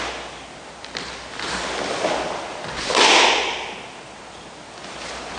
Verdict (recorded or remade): recorded